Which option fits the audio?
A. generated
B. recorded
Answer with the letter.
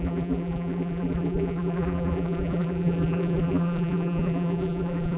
A